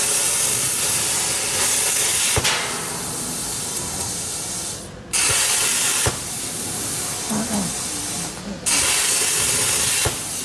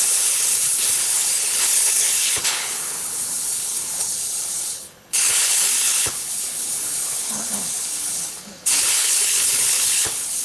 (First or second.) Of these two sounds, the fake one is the second